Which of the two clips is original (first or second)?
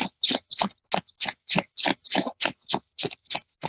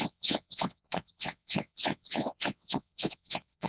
first